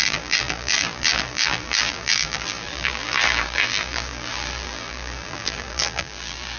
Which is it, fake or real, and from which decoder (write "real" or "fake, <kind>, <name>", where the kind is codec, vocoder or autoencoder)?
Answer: fake, vocoder, BigVGAN v2